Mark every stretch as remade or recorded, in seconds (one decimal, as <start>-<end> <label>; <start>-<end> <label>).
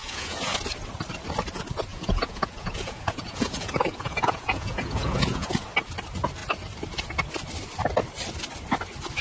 0.0-0.6 remade; 0.6-1.9 recorded; 1.9-5.5 remade; 5.5-9.2 recorded